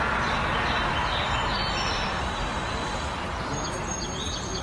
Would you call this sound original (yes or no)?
yes